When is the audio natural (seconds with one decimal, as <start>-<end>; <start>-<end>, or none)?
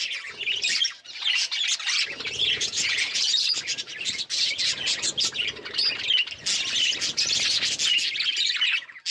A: 0.0-2.4; 3.4-9.1